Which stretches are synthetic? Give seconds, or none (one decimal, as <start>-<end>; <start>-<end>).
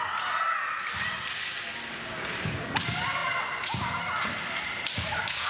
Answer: none